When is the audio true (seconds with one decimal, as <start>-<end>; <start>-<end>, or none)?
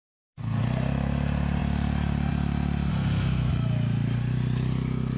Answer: 0.6-2.9; 3.5-5.2